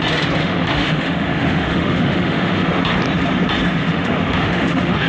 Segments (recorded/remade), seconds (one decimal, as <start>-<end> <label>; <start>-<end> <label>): 0.0-0.4 recorded; 0.4-2.8 remade; 2.8-3.8 recorded; 3.8-5.1 remade